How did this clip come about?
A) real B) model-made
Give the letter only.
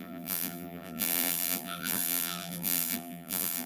B